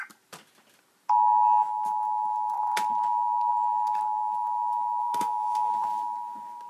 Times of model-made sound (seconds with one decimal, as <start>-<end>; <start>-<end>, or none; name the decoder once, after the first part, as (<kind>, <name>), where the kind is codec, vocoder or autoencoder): 5.0-5.7 (codec, SNAC)